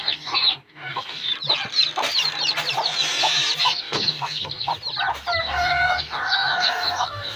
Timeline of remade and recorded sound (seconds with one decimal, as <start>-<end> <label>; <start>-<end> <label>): 0.0-1.3 remade; 1.3-3.6 recorded; 3.6-4.7 remade; 4.7-5.4 recorded; 5.4-7.4 remade